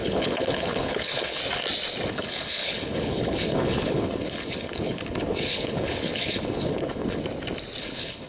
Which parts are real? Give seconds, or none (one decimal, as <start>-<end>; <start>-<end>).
1.4-2.1; 7.2-7.8